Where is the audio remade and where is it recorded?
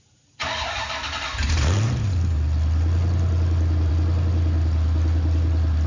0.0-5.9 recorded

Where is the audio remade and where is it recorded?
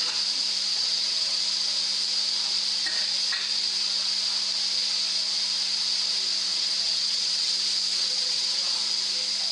0.0-0.7 recorded; 0.7-1.4 remade; 1.4-6.5 recorded; 6.5-7.5 remade; 7.5-7.9 recorded; 7.9-8.8 remade; 8.8-9.5 recorded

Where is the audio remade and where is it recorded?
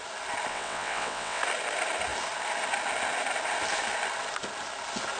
0.0-0.5 recorded; 0.5-1.4 remade; 1.4-5.2 recorded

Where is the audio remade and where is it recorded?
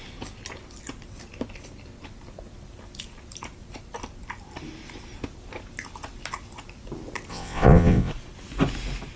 0.0-7.3 recorded; 7.3-8.1 remade; 8.1-9.2 recorded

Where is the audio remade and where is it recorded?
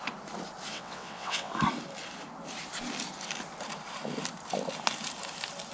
0.0-0.7 recorded; 0.7-1.5 remade; 1.5-5.7 recorded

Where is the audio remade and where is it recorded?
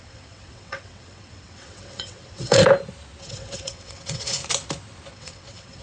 0.0-2.6 remade; 2.6-3.2 recorded; 3.2-4.4 remade; 4.4-5.1 recorded; 5.1-5.8 remade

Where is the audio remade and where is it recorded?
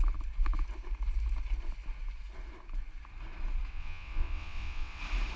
0.0-3.7 recorded; 3.7-5.0 remade; 5.0-5.4 recorded